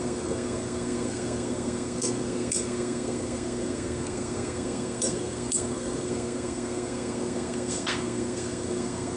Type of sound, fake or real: fake